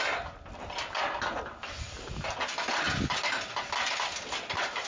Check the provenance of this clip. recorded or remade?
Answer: recorded